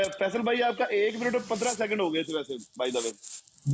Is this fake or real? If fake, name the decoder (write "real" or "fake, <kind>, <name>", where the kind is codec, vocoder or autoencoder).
real